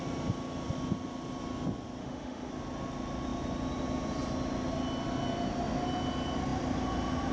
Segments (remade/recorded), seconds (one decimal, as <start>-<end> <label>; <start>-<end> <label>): 0.0-2.0 recorded; 2.0-2.5 remade; 2.5-7.3 recorded